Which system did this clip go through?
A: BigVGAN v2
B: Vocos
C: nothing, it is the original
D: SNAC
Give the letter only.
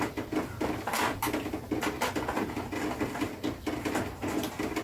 C